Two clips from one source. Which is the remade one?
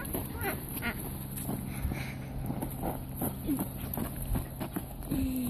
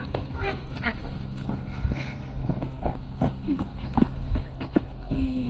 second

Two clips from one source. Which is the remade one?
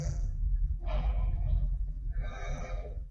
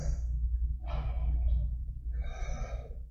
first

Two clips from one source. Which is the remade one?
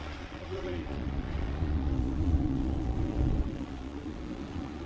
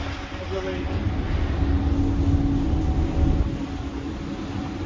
first